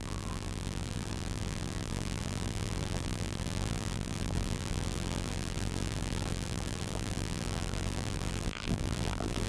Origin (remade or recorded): remade